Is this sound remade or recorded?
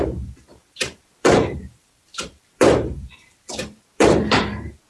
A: remade